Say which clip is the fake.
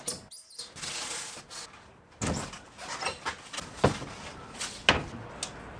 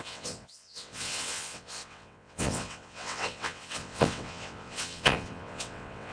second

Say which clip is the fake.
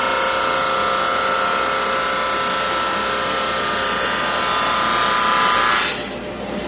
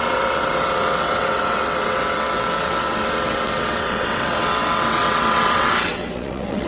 second